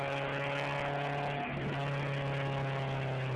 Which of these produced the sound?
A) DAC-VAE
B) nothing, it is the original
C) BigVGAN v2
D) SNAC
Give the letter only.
B